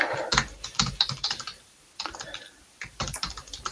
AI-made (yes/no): yes